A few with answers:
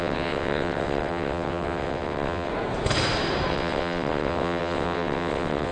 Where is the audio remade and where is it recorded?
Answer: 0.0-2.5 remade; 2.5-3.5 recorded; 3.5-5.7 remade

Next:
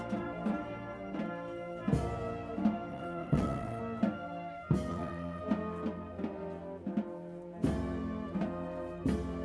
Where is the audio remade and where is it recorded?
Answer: 0.0-2.9 recorded; 2.9-3.8 remade; 3.8-4.9 recorded; 4.9-5.4 remade; 5.4-9.4 recorded

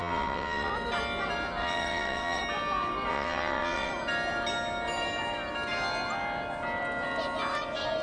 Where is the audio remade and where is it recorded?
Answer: 0.0-0.7 remade; 0.7-1.6 recorded; 1.6-2.4 remade; 2.4-3.1 recorded; 3.1-3.9 remade; 3.9-8.0 recorded

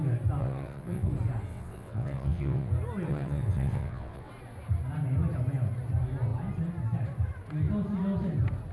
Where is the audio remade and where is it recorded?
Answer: 0.0-0.4 recorded; 0.4-1.1 remade; 1.1-1.5 recorded; 1.5-2.7 remade; 2.7-3.1 recorded; 3.1-4.3 remade; 4.3-8.7 recorded

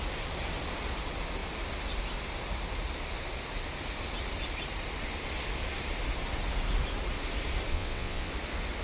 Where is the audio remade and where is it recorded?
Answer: 0.0-7.7 recorded; 7.7-8.3 remade; 8.3-8.8 recorded

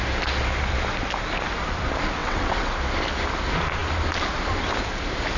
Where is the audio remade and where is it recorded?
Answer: 0.0-2.2 recorded; 2.2-2.7 remade; 2.7-5.4 recorded

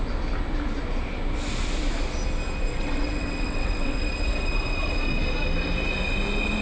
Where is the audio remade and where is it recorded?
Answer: 0.0-2.7 recorded; 2.7-4.0 remade; 4.0-6.6 recorded

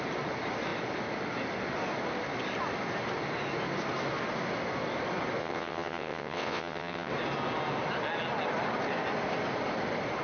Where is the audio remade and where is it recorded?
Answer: 0.0-5.4 recorded; 5.4-7.1 remade; 7.1-10.2 recorded